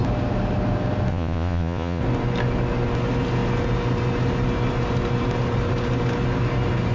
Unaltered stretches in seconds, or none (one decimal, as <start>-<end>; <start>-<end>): 0.0-1.1; 2.0-6.9